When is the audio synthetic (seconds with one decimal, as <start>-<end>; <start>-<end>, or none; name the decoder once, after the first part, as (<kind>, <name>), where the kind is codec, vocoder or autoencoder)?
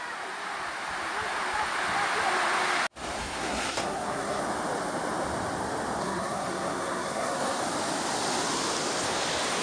3.2-4.4 (codec, SNAC); 6.0-7.6